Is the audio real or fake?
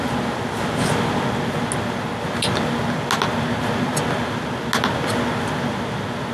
real